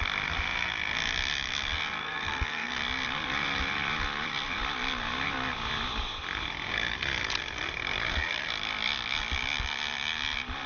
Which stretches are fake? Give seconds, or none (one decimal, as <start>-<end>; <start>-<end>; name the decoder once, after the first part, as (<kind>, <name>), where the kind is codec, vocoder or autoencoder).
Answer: 2.0-2.7 (codec, SNAC)

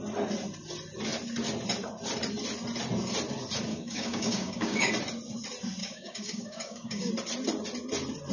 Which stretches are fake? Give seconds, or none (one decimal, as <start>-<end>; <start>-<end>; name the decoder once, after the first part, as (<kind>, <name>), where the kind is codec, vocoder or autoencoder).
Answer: 3.7-4.9 (codec, DAC); 5.8-7.1

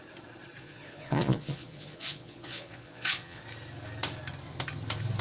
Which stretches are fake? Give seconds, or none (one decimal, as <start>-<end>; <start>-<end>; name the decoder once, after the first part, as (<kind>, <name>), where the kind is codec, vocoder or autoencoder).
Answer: 0.6-3.4 (vocoder, Vocos)

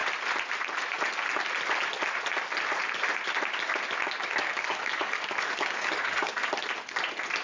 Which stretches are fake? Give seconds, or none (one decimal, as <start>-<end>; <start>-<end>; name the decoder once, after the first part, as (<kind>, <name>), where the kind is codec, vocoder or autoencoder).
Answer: 4.3-6.4 (codec, DAC)

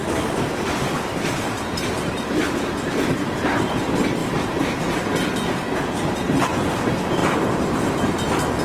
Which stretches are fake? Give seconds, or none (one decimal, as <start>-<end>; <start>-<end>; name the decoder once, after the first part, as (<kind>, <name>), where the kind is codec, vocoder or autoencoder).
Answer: 1.1-3.8 (vocoder, BigVGAN v2); 4.2-4.8

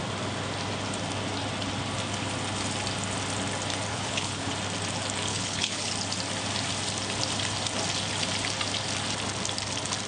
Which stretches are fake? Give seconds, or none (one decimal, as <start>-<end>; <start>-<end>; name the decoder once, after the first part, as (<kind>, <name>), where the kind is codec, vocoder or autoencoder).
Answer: 3.9-4.5 (codec, HILCodec); 5.3-5.9

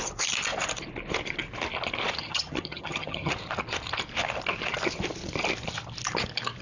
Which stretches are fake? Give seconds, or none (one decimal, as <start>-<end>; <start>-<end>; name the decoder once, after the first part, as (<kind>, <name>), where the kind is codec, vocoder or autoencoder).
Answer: 2.2-3.3 (vocoder, HiFi-GAN)

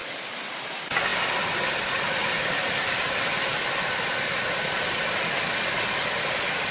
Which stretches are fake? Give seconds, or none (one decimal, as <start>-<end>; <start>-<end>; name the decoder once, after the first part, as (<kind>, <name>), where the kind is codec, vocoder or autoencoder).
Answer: none